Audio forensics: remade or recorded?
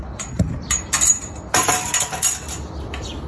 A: recorded